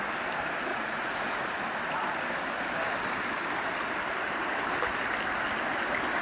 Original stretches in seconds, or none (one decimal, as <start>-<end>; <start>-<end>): 0.0-0.7; 1.4-6.2